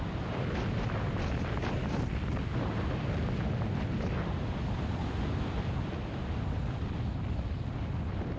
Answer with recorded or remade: recorded